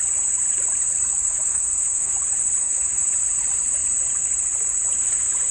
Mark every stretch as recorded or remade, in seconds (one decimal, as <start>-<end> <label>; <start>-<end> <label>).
0.0-1.2 recorded; 1.2-2.2 remade; 2.2-2.6 recorded; 2.6-3.1 remade; 3.1-5.5 recorded